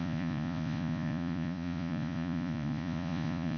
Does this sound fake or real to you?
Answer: fake